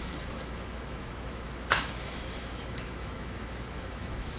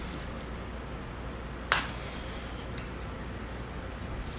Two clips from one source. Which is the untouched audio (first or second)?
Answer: second